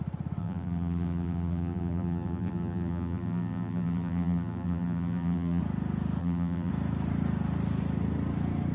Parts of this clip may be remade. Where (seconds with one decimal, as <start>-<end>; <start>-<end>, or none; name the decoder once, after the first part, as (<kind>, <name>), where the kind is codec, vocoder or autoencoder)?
0.4-5.6 (vocoder, BigVGAN v2); 6.2-6.7